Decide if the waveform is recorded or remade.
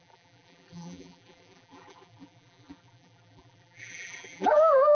remade